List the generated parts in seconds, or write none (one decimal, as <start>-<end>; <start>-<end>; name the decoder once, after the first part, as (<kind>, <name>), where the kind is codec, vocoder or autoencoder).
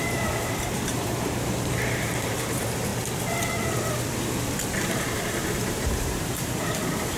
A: 0.0-2.9 (vocoder, BigVGAN v2); 4.8-7.2